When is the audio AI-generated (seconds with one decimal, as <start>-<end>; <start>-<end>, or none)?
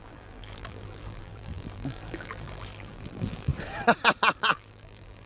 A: 0.0-3.5; 4.4-5.3